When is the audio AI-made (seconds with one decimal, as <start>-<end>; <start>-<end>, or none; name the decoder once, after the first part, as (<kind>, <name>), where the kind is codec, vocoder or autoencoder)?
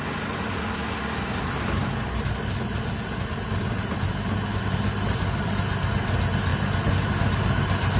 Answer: 0.8-4.1 (vocoder, BigVGAN v2)